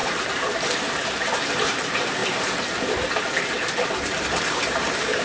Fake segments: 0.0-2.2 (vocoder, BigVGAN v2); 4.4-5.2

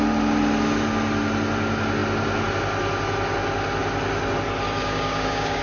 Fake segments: 4.8-5.6 (codec, DAC)